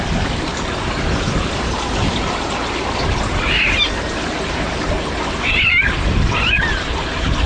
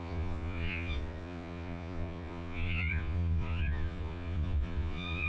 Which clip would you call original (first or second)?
first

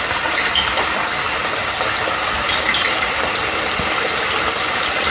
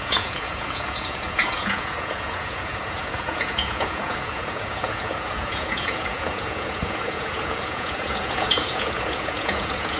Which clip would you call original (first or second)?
first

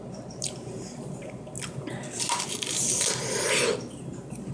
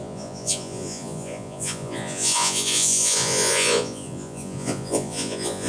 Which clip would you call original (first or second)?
first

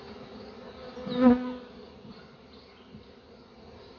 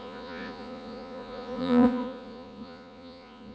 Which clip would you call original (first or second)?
first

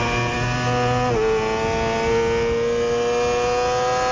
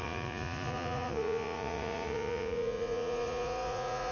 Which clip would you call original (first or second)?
first